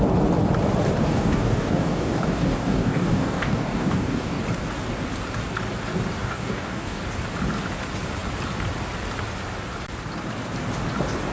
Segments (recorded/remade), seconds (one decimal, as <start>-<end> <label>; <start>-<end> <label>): 0.0-1.0 recorded; 1.0-4.4 remade; 4.4-6.2 recorded; 6.2-7.0 remade; 7.0-11.3 recorded